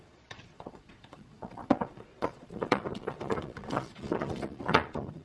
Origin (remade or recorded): remade